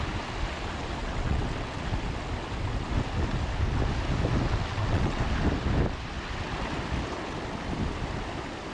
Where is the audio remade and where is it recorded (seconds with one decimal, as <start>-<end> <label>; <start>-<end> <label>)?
0.0-1.0 recorded; 1.0-1.8 remade; 1.8-4.7 recorded; 4.7-5.2 remade; 5.2-8.7 recorded